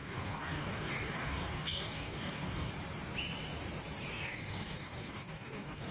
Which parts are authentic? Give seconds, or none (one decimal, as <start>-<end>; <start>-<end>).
2.7-4.1